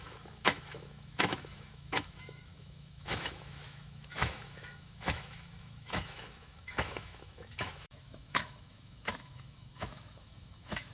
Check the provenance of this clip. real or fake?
fake